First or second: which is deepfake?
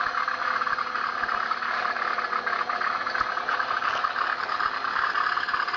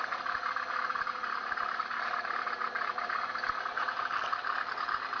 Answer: second